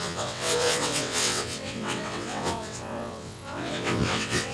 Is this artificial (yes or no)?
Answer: yes